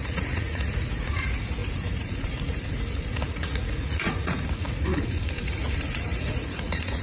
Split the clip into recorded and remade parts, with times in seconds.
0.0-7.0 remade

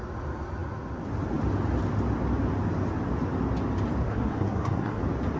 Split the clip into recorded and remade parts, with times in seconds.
0.0-4.0 recorded; 4.0-5.0 remade; 5.0-5.4 recorded

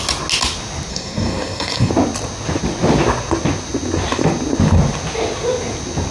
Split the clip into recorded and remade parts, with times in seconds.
0.0-0.9 recorded; 0.9-1.9 remade; 1.9-6.1 recorded

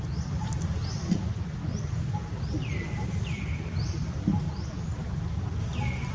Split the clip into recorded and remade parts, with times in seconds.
0.0-6.1 recorded